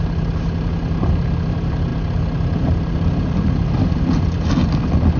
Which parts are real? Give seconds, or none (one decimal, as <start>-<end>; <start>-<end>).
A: 0.0-5.2